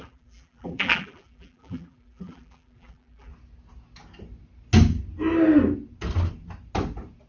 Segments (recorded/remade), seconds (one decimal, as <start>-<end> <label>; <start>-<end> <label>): 0.0-3.3 remade; 3.3-7.3 recorded